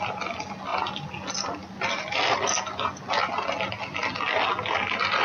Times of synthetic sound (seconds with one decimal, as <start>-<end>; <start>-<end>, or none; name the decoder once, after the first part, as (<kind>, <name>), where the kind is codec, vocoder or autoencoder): none